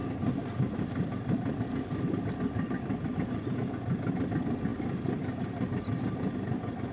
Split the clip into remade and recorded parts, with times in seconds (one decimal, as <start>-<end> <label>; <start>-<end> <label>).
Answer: 0.0-6.9 recorded